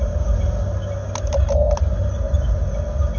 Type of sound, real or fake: real